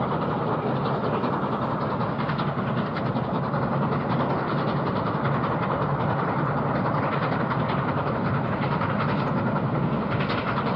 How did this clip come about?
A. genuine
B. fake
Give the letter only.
A